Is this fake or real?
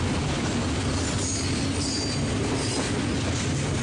real